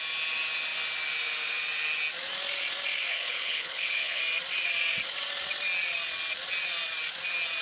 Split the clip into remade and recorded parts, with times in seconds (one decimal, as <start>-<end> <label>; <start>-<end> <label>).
0.0-3.1 recorded; 3.1-4.2 remade; 4.2-7.6 recorded